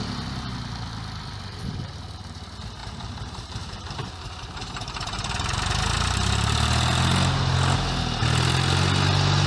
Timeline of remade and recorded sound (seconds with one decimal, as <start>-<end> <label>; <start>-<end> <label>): 0.0-2.8 recorded; 2.8-5.7 remade; 5.7-9.5 recorded